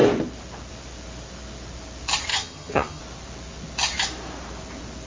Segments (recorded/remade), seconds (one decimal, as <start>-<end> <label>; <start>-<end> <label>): 0.0-2.3 recorded; 2.3-3.0 remade; 3.0-5.1 recorded